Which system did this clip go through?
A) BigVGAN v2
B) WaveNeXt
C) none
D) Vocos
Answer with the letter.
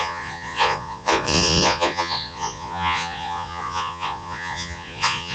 D